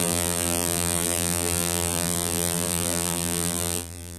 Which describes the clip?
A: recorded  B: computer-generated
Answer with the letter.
B